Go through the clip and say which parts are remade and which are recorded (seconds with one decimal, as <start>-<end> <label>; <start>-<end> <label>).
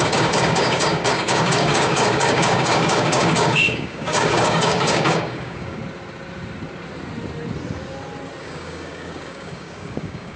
0.0-5.8 remade; 5.8-8.4 recorded; 8.4-10.4 remade